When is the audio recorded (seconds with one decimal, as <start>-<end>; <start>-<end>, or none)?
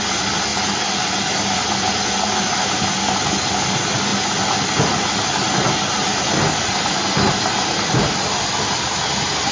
0.0-9.5